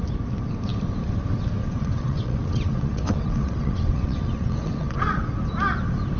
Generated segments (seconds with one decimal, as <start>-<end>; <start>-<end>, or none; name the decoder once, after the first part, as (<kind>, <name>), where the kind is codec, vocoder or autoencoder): 1.6-5.3 (vocoder, WaveNeXt)